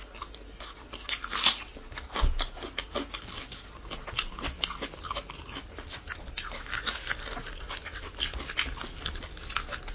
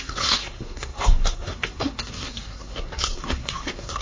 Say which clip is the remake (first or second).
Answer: second